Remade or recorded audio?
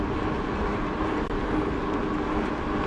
recorded